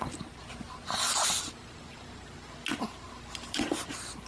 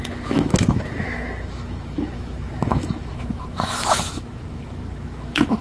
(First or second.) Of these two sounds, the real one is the first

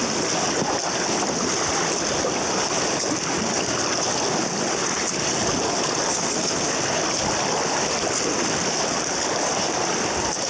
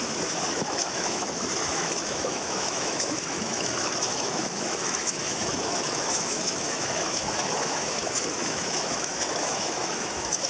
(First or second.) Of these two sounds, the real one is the first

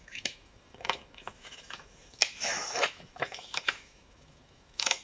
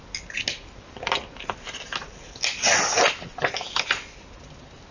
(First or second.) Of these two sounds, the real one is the second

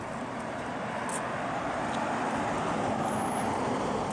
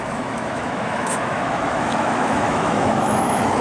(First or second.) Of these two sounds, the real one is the first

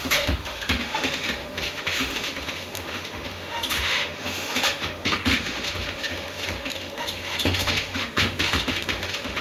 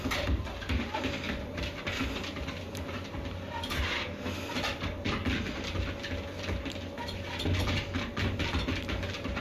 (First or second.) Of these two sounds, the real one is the second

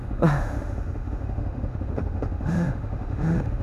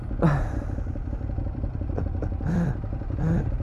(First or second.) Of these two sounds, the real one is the second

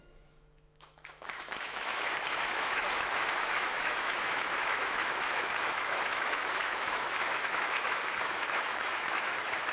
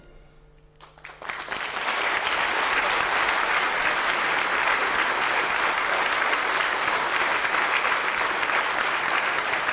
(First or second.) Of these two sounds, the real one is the second